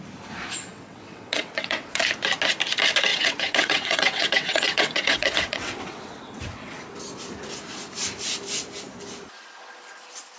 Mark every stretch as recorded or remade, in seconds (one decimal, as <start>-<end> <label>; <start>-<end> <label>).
0.0-0.7 recorded; 0.7-2.0 remade; 2.0-3.1 recorded; 3.1-6.8 remade; 6.8-10.4 recorded